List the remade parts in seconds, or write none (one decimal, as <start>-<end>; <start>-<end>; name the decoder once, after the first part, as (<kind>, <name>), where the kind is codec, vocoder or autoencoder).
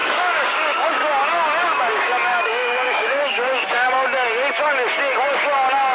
0.0-0.9 (codec, DAC); 2.3-3.9